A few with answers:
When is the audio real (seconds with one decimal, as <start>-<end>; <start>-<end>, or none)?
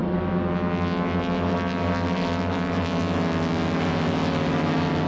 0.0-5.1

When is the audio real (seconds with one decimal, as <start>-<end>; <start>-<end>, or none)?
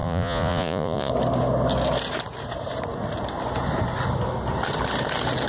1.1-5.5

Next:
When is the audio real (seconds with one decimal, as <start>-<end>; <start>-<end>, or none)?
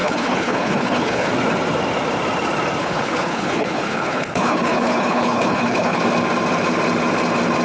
1.3-2.8; 6.0-7.6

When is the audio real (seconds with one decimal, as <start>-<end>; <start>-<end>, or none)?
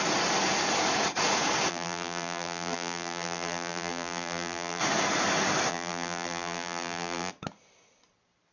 0.0-1.7; 4.8-5.7; 7.3-8.5